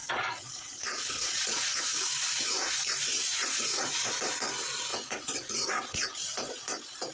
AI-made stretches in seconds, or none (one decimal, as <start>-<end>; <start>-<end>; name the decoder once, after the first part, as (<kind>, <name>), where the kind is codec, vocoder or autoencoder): 0.0-1.8 (vocoder, Vocos); 3.3-4.1; 4.9-6.5